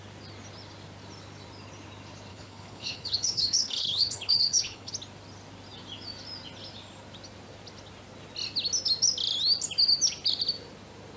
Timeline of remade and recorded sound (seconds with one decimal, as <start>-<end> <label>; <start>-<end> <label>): 0.0-2.3 recorded; 2.3-4.9 remade; 4.9-11.2 recorded